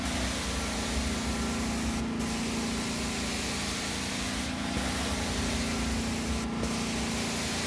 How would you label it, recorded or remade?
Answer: recorded